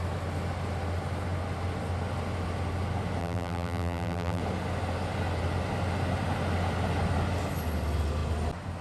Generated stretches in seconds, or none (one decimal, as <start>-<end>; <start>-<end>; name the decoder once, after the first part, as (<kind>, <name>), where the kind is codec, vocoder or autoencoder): 3.2-4.4 (vocoder, BigVGAN v2)